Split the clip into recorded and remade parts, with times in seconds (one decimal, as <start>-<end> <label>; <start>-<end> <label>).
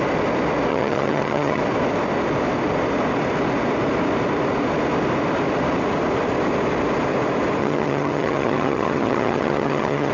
0.0-0.7 recorded; 0.7-1.6 remade; 1.6-7.6 recorded; 7.6-10.1 remade